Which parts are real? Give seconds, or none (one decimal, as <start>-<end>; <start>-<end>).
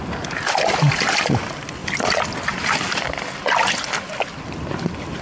0.0-5.2